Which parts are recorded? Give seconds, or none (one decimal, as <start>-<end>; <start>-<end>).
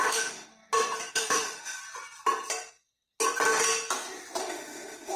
0.5-1.1; 1.8-4.4